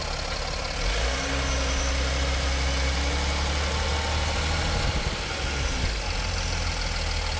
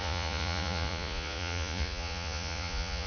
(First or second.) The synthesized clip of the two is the second